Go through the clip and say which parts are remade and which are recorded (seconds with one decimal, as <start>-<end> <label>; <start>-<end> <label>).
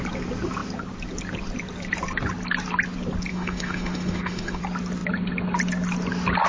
0.0-3.3 recorded; 3.3-4.6 remade; 4.6-6.5 recorded